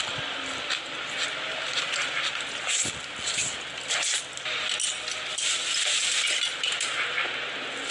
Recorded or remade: recorded